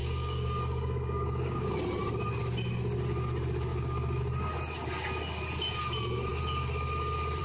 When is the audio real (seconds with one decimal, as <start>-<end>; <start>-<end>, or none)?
1.8-3.7; 4.2-7.4

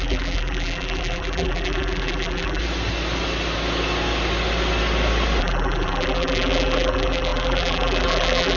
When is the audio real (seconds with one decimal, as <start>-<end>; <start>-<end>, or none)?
2.6-5.4

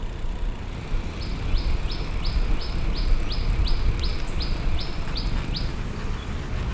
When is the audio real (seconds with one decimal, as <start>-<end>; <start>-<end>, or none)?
0.0-4.1; 5.6-6.7

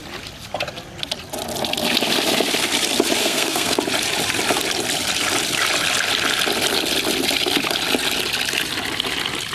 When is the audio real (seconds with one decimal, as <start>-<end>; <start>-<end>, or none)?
0.0-3.2; 3.8-9.5

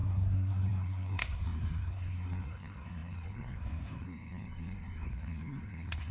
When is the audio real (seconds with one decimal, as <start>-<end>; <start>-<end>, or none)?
none

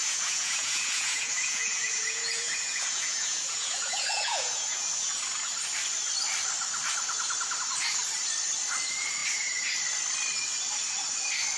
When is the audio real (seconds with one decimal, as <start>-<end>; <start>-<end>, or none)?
5.2-11.6

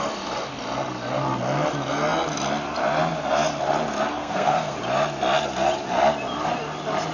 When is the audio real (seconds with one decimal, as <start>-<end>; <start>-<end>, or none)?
0.0-4.2; 4.8-7.1

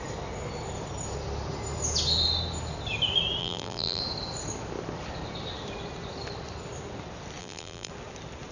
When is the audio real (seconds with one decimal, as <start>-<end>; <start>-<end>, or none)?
0.0-3.4; 4.0-7.4; 7.9-8.5